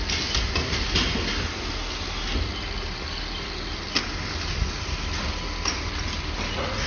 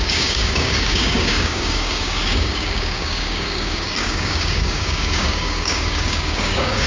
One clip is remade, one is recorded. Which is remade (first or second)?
second